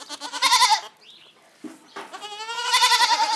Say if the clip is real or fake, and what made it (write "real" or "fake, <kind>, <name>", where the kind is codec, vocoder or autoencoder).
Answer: real